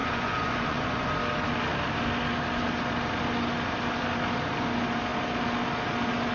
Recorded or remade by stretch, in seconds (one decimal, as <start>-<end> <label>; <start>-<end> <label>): 0.0-1.1 remade; 1.1-6.3 recorded